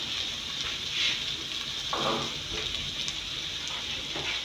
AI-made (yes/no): no